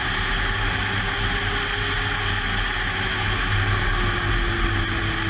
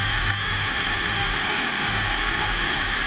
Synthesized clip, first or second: second